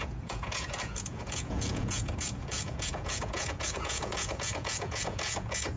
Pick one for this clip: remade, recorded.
remade